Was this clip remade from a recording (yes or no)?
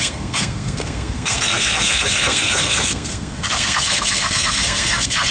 yes